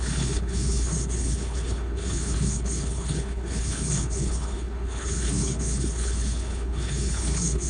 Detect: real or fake fake